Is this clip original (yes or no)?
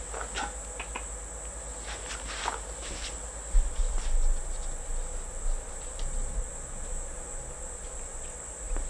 yes